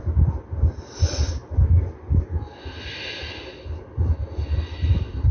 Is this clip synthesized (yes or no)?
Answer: no